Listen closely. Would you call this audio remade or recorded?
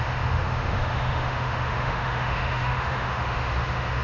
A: remade